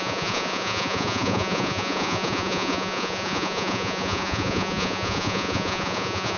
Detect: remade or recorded remade